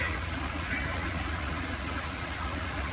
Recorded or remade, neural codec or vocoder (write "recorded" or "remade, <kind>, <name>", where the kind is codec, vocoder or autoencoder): remade, vocoder, Vocos